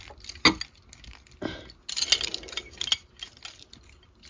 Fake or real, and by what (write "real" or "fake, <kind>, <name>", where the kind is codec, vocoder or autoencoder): real